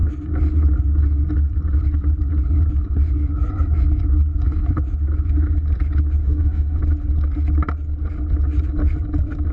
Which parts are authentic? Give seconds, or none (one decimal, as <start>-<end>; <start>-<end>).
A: 0.0-6.2; 6.8-9.5